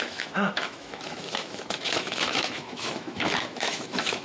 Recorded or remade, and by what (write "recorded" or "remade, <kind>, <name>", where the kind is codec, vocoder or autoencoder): remade, autoencoder, DAC-VAE